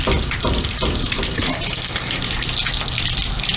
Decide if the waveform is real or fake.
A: real